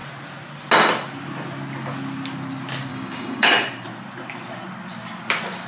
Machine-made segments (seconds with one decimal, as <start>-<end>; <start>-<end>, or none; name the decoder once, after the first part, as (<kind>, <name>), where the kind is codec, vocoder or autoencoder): 2.9-3.5 (codec, DAC)